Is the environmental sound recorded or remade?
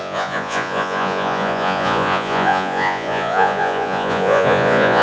remade